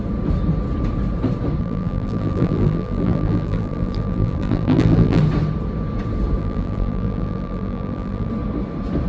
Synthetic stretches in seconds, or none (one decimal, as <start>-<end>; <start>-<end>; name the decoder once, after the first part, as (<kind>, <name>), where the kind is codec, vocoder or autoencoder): 1.6-5.2 (vocoder, BigVGAN v2); 6.4-8.3